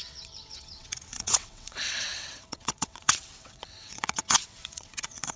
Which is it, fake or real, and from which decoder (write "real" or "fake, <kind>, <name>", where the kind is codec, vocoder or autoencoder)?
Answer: fake, vocoder, WaveNeXt